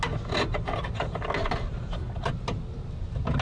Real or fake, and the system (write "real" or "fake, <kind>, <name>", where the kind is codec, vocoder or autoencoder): real